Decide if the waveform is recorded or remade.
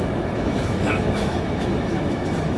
remade